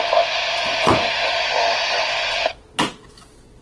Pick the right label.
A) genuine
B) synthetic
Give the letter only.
A